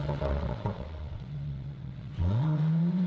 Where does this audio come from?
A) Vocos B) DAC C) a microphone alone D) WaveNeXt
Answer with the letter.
D